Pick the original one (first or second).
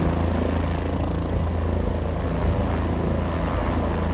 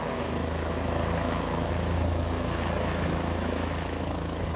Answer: first